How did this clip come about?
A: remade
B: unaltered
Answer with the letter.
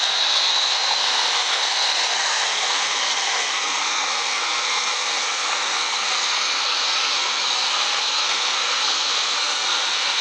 A